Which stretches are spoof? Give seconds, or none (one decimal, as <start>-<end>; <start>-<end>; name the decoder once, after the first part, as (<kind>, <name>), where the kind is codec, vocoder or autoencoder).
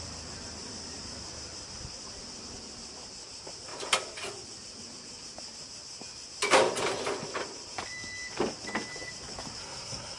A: 9.6-10.2 (codec, SNAC)